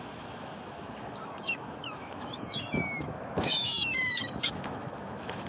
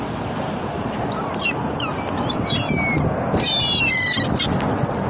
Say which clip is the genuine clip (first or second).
second